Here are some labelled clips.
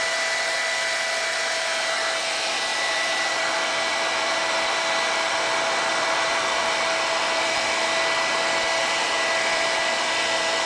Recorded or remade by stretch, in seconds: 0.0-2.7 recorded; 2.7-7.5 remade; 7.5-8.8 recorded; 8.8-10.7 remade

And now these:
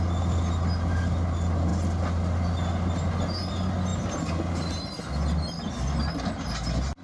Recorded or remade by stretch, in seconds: 0.0-7.0 recorded

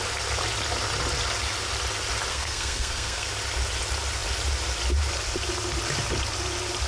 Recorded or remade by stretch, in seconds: 0.0-2.3 recorded; 2.3-3.3 remade; 3.3-6.9 recorded